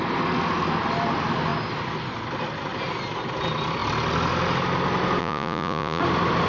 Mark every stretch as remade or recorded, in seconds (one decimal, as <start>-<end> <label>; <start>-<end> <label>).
0.0-5.2 recorded; 5.2-6.0 remade; 6.0-6.5 recorded